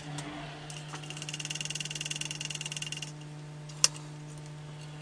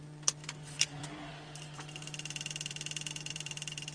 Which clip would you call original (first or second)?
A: first